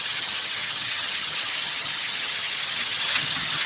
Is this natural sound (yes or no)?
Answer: no